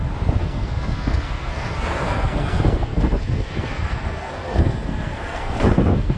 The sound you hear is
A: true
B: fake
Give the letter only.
B